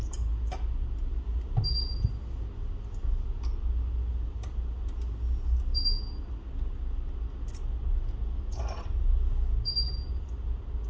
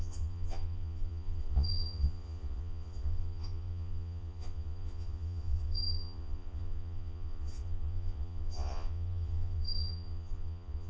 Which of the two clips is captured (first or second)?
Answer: first